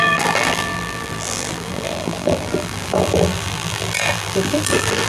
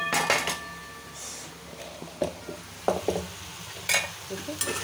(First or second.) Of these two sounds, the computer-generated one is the first